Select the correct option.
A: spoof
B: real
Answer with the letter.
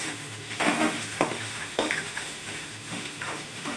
A